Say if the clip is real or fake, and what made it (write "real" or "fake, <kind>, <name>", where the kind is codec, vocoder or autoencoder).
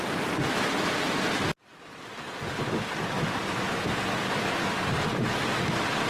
real